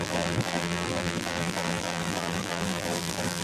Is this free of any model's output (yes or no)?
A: no